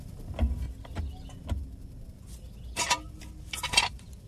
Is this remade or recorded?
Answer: recorded